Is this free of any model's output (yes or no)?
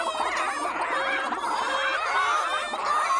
yes